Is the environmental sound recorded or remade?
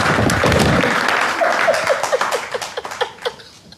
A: recorded